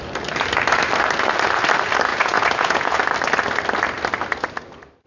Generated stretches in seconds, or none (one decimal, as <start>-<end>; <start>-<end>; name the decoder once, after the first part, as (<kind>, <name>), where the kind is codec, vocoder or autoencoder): 2.1-3.0 (vocoder, Vocos)